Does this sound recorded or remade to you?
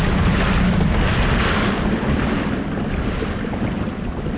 recorded